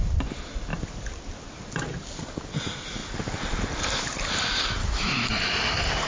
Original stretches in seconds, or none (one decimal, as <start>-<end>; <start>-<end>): 0.0-4.8; 5.4-6.1